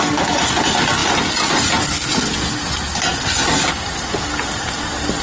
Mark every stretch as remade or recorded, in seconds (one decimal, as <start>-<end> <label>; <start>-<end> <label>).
0.0-5.2 recorded

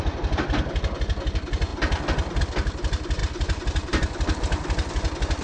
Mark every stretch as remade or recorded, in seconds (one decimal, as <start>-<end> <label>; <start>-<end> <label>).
0.0-5.4 recorded

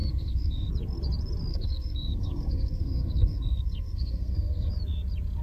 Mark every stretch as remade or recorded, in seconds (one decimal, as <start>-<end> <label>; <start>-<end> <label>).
0.0-0.7 remade; 0.7-1.5 recorded; 1.5-4.7 remade; 4.7-5.4 recorded